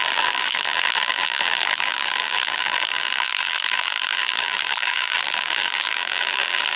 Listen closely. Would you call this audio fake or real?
fake